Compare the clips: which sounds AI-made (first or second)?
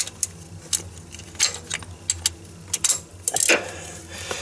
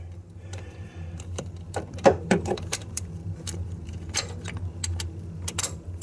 second